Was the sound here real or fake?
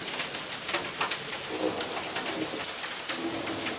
real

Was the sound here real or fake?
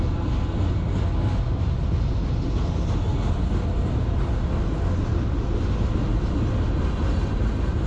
real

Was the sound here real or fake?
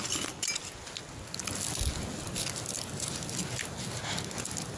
real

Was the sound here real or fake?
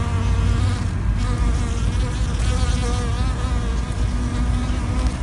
real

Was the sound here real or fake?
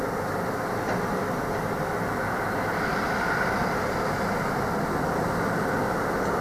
real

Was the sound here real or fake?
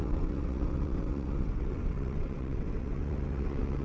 fake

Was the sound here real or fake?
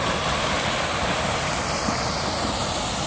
real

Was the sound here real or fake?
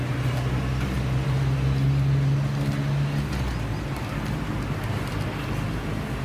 real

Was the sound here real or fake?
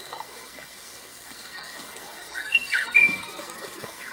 fake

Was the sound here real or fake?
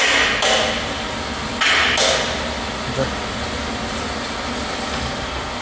real